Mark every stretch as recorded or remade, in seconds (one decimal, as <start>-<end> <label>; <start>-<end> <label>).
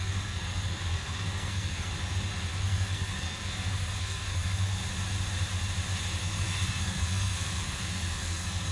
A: 0.0-1.9 remade; 1.9-2.6 recorded; 2.6-4.8 remade; 4.8-6.2 recorded; 6.2-8.7 remade